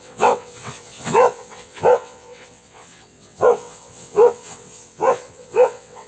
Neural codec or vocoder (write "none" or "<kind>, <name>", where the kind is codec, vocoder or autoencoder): vocoder, WaveNeXt